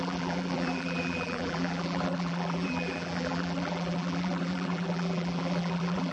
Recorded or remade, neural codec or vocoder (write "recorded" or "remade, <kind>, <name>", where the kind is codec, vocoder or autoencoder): remade, vocoder, BigVGAN v2